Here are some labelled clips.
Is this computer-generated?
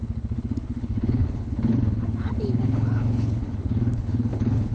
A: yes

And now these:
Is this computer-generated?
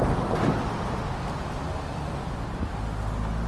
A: no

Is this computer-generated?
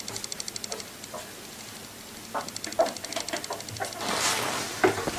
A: no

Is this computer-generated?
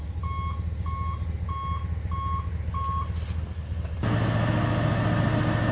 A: no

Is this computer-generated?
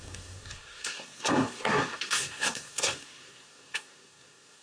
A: yes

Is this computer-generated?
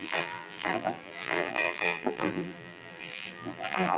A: yes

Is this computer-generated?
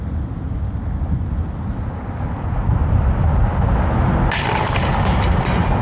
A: no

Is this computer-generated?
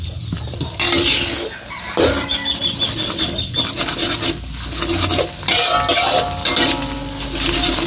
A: no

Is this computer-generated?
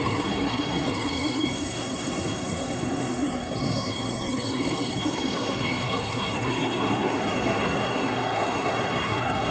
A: yes